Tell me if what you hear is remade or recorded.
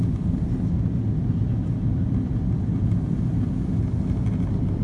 recorded